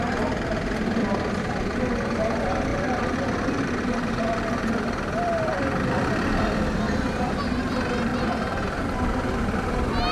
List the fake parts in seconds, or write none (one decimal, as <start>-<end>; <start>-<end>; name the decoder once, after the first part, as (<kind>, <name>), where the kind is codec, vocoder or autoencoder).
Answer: 1.0-1.5 (vocoder, BigVGAN v2); 2.7-5.9; 8.1-8.8